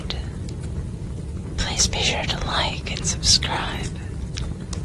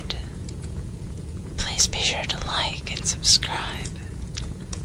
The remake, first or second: second